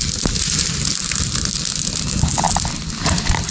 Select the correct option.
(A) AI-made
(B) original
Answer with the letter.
B